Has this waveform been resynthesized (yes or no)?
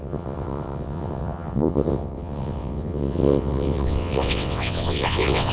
yes